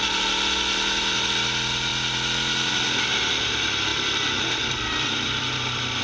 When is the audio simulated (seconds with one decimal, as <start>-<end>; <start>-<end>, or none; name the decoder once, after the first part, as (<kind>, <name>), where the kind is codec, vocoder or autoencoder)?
3.9-6.0 (vocoder, BigVGAN v2)